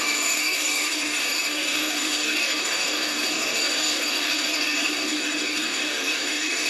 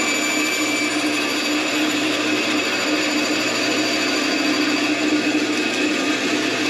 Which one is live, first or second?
second